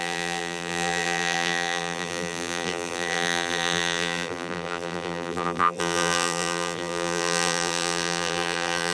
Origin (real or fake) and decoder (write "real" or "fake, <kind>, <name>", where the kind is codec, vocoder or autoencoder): fake, vocoder, BigVGAN v2